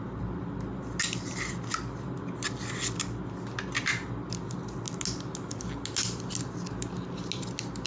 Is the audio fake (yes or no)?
no